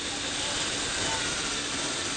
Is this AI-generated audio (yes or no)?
no